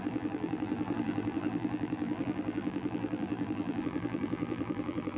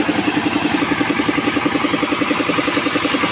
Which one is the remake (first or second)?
first